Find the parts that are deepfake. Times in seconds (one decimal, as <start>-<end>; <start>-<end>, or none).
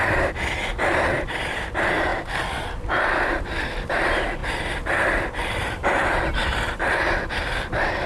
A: none